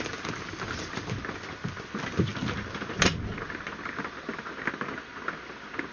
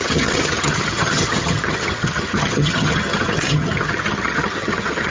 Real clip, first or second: first